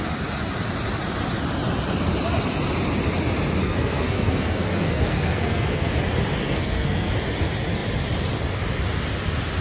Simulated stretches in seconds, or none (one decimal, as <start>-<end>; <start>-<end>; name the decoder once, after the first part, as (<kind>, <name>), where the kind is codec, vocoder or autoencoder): 3.6-5.9 (codec, SNAC); 6.4-7.1